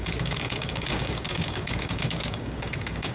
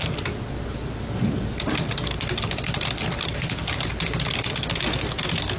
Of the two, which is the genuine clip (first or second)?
second